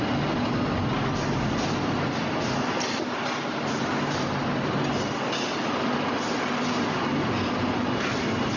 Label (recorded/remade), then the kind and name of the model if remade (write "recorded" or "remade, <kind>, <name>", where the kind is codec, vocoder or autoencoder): recorded